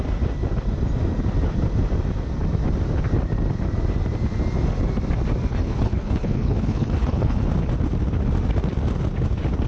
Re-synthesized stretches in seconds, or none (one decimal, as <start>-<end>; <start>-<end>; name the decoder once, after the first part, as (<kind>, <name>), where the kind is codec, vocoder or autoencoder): 5.5-7.4 (codec, HILCodec)